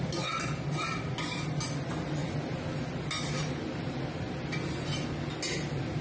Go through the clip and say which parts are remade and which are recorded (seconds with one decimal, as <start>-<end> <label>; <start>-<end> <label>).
0.0-6.0 recorded